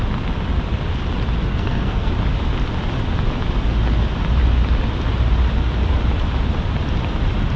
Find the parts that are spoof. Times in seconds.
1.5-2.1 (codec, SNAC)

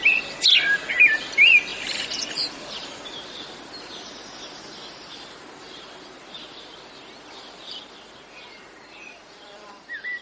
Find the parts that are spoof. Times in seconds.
none